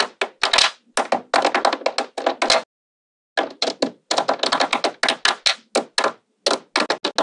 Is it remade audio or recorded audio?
recorded